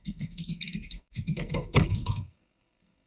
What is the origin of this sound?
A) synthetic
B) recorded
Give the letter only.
A